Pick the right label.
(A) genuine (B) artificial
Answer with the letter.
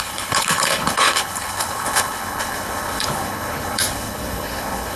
B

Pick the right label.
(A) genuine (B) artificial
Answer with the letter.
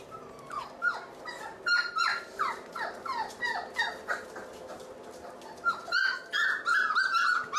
A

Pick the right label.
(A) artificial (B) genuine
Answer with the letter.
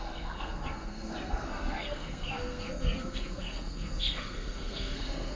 A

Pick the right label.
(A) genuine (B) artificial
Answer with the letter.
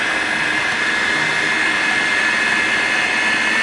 A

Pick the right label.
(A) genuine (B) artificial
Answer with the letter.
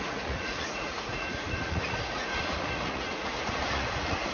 B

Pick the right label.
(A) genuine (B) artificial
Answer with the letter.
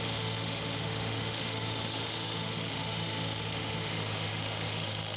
B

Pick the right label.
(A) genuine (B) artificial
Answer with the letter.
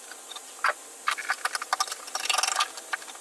A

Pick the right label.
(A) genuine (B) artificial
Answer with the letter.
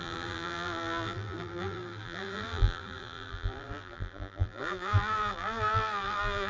B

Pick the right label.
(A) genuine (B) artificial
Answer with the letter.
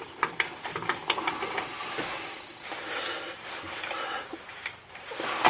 A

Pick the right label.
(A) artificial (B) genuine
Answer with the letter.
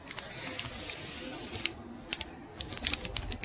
B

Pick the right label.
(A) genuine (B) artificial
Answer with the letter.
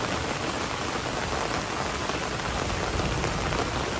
A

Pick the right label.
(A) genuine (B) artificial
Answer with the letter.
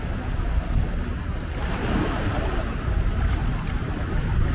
A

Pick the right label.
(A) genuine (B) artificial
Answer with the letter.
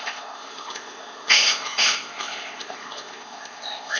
B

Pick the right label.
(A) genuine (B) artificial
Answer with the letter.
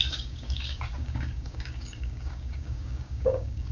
B